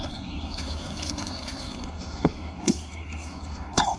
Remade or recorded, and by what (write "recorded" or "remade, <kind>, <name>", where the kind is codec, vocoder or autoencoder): remade, codec, SNAC